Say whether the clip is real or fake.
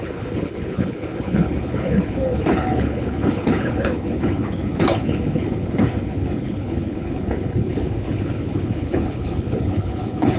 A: fake